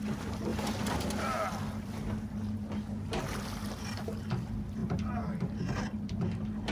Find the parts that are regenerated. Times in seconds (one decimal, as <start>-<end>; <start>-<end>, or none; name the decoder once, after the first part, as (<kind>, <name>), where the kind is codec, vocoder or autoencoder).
none